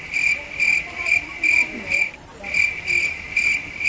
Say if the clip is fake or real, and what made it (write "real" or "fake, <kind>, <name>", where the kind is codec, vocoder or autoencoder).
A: real